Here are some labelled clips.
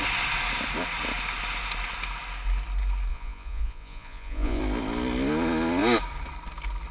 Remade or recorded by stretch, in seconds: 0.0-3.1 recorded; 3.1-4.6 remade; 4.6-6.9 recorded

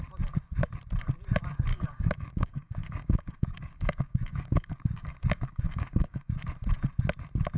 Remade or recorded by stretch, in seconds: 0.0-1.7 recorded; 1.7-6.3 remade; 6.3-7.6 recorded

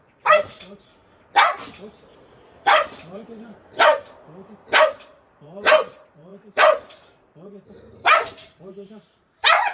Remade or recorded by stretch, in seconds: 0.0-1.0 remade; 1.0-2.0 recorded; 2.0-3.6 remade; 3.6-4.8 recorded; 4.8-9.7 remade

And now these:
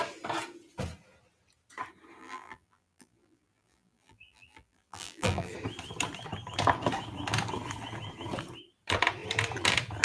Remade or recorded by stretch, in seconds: 0.0-2.2 recorded; 2.2-5.5 remade; 5.5-10.0 recorded

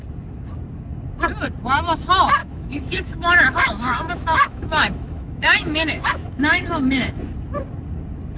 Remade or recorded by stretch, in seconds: 0.0-2.4 recorded; 2.4-7.2 remade; 7.2-8.4 recorded

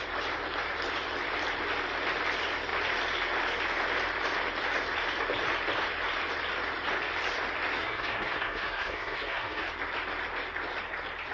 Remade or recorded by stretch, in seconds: 0.0-7.8 recorded; 7.8-9.6 remade; 9.6-11.3 recorded

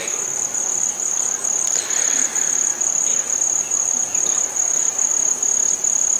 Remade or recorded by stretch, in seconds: 0.0-5.1 remade; 5.1-5.7 recorded; 5.7-6.2 remade